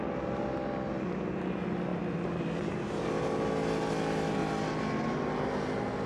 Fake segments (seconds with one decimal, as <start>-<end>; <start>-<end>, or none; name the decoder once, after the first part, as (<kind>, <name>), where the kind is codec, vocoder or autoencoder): none